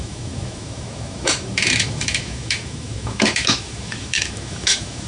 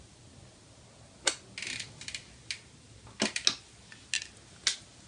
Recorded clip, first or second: second